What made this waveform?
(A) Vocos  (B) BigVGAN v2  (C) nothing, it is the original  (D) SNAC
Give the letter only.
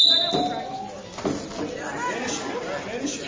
C